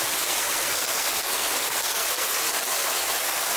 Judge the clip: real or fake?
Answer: fake